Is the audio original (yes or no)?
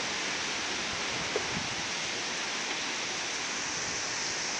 yes